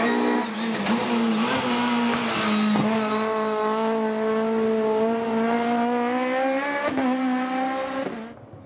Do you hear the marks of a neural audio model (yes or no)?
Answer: no